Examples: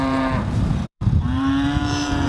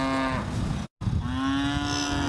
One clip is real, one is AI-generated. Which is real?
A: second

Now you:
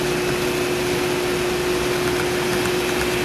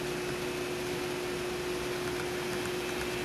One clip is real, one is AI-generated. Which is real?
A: second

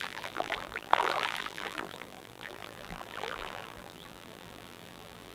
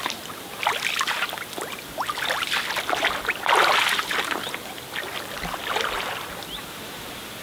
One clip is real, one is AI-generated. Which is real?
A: second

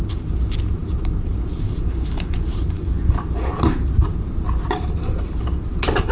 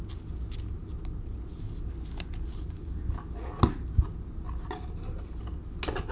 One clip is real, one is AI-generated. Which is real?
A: second